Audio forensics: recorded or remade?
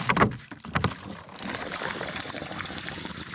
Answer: recorded